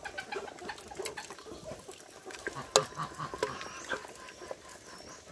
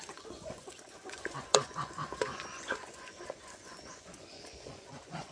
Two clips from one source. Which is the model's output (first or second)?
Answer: second